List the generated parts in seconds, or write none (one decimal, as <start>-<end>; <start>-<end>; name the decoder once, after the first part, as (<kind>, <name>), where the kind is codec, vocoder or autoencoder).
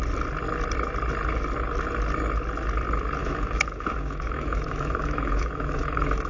3.2-6.3 (autoencoder, DAC-VAE)